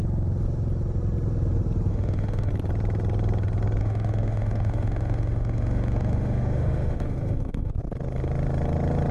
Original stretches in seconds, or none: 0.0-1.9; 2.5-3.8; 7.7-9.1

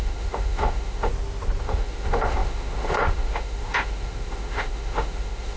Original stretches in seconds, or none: 1.1-1.6

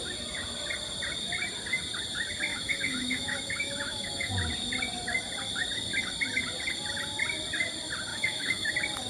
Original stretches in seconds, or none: 0.0-2.5; 4.3-8.1; 8.7-9.1